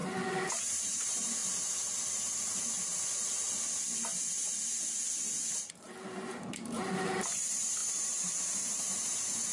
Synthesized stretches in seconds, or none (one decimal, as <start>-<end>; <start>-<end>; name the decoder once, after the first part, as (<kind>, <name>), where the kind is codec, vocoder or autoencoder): 0.0-1.4 (vocoder, BigVGAN v2); 5.7-9.5